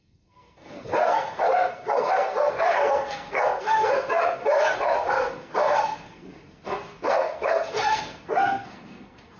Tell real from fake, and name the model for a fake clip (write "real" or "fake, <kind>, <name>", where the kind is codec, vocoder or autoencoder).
fake, codec, SNAC